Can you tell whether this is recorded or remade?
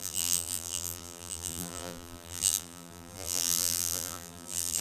remade